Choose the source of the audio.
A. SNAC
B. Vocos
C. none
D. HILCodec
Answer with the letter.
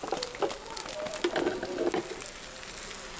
C